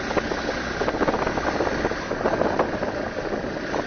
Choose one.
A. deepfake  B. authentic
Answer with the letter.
B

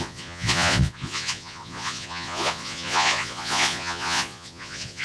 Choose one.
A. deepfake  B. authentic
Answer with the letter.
A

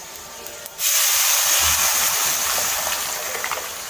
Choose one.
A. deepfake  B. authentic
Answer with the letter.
B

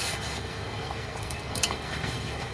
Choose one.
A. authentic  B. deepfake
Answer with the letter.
B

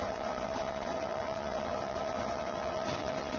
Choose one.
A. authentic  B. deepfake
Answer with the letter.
B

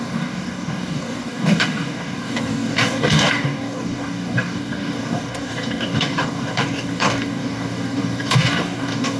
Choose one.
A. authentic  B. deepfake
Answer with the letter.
B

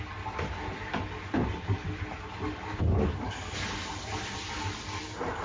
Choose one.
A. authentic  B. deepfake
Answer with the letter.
A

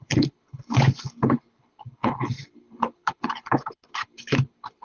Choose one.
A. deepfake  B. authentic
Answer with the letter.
A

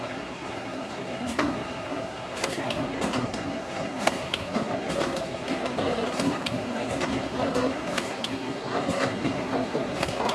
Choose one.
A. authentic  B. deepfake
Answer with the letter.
B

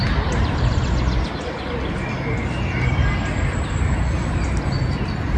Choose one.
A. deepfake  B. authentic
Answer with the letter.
B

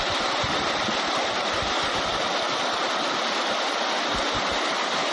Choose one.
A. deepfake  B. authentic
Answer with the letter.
B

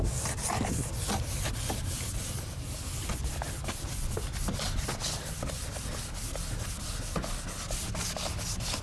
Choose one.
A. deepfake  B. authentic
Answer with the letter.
B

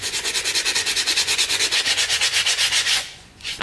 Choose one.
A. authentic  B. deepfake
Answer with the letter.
B